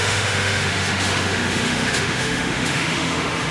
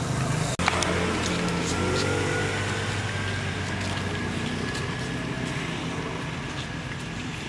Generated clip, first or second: first